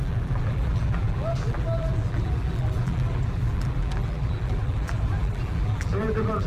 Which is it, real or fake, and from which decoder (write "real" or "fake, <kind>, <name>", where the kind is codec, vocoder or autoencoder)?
fake, vocoder, BigVGAN v2